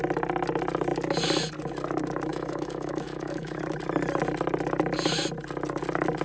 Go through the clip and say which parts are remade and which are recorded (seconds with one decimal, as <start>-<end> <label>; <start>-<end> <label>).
0.0-2.3 recorded; 2.3-3.6 remade; 3.6-6.2 recorded